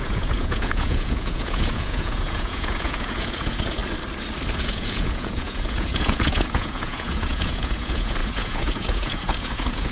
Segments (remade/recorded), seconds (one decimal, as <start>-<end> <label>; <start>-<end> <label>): 0.0-3.8 remade; 3.8-4.6 recorded; 4.6-9.9 remade

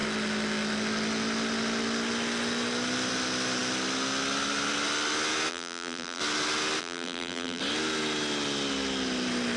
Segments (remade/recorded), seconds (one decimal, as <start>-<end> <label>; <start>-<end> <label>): 0.0-5.5 recorded; 5.5-6.2 remade; 6.2-6.8 recorded; 6.8-7.6 remade; 7.6-9.6 recorded

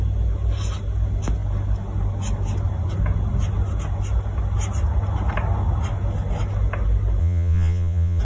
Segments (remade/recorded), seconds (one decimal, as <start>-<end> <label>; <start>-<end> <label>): 0.0-7.2 recorded; 7.2-8.2 remade

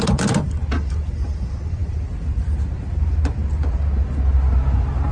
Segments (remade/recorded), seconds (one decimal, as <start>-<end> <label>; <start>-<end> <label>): 0.0-5.1 recorded